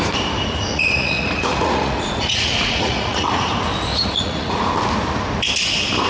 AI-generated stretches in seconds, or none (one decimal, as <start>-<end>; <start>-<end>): 0.7-3.5; 3.9-4.7